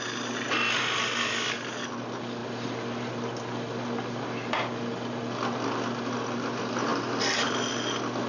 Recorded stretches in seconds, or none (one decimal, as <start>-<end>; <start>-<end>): 0.0-8.3